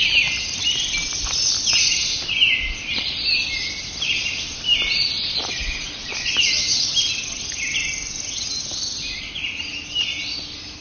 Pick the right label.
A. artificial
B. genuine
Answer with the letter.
B